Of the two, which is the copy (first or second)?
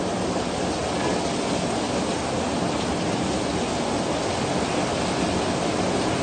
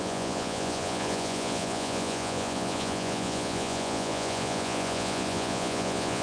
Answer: second